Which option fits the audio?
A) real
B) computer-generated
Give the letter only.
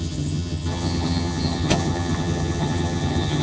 B